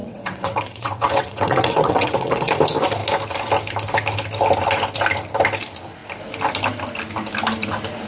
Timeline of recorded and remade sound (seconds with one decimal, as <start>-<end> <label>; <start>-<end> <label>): 0.0-2.5 remade; 2.5-8.1 recorded